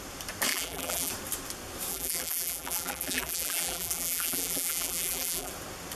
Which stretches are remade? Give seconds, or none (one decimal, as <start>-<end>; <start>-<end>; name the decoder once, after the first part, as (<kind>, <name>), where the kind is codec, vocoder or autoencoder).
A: 0.5-1.1 (vocoder, BigVGAN v2); 1.9-5.5